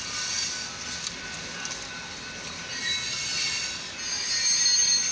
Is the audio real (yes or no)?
yes